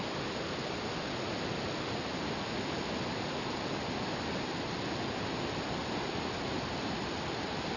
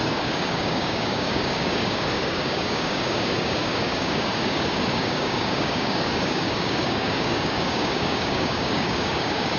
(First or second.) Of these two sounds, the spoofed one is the second